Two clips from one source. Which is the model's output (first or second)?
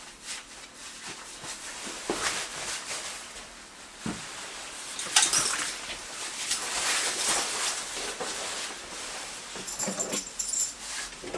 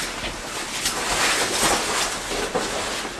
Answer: first